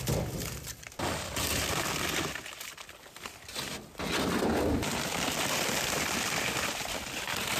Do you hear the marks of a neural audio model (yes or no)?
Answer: no